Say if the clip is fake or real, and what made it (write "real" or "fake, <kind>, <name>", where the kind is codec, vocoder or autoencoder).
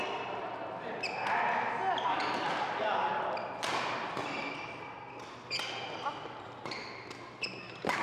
real